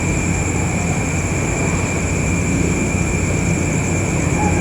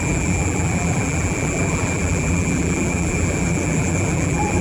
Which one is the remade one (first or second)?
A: second